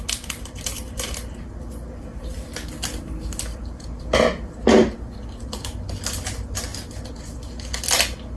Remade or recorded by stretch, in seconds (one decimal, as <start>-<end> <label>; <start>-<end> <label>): 0.0-8.4 recorded